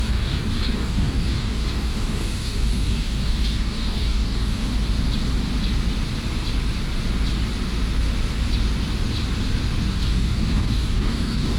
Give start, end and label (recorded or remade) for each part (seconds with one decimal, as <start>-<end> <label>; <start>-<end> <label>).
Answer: 0.0-4.7 remade; 4.7-9.9 recorded; 9.9-11.6 remade